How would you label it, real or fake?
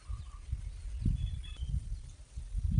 real